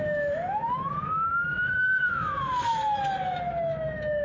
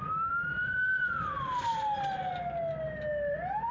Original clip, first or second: second